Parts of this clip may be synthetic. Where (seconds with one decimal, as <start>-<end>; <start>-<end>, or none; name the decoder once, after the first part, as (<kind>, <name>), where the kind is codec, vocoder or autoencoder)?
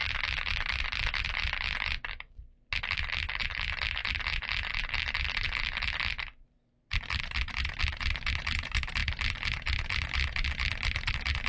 none